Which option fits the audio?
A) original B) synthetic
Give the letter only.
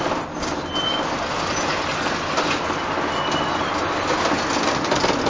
A